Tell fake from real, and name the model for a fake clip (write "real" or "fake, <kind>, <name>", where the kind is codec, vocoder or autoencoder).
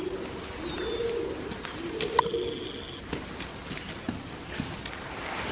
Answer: real